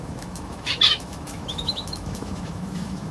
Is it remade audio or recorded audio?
remade